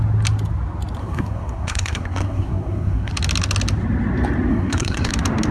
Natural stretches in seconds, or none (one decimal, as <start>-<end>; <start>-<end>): 0.0-1.0; 3.1-4.5; 5.1-5.5